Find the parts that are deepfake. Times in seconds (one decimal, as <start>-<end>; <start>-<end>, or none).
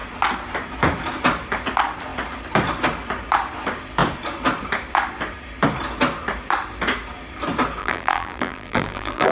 7.8-9.3